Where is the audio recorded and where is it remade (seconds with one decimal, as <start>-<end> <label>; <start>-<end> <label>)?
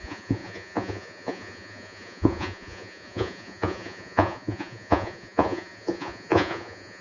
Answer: 0.0-7.0 remade